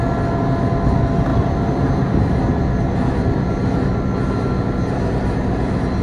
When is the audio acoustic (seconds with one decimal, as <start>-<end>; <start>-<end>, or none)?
0.0-1.3; 1.9-6.0